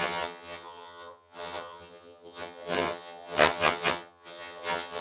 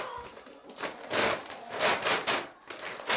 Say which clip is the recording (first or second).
second